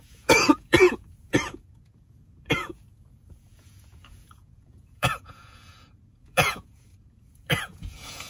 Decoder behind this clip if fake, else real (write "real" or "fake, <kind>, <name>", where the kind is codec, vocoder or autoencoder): fake, vocoder, Vocos